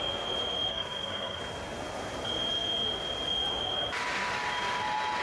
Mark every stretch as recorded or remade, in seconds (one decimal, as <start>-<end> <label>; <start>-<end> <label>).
0.0-0.7 recorded; 0.7-1.4 remade; 1.4-5.2 recorded